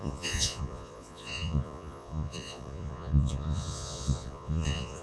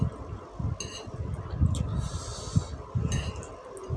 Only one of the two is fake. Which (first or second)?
first